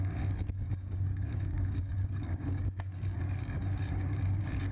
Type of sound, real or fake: fake